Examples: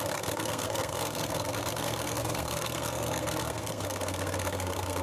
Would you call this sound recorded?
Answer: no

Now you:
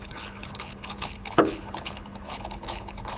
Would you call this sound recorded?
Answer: no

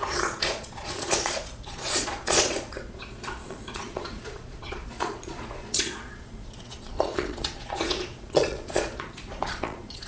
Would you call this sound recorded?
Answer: no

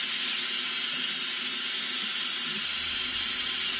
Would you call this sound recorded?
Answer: yes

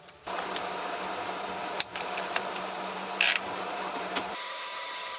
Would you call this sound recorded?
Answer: no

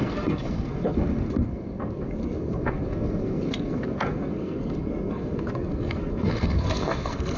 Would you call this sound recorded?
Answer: no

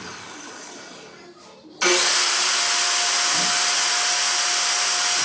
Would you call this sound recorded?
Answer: yes